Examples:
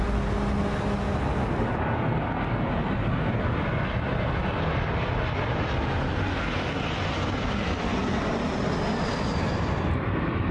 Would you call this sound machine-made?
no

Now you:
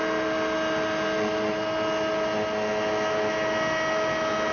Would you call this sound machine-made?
no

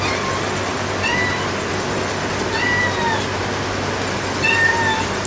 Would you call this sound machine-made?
no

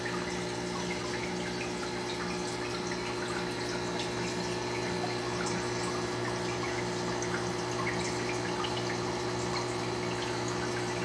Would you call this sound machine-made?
no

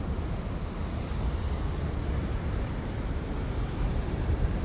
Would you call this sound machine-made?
no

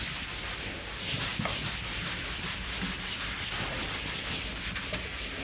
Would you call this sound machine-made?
no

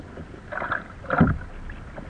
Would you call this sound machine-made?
no